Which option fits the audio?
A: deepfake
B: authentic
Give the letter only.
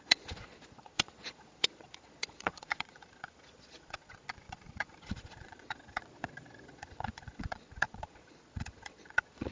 A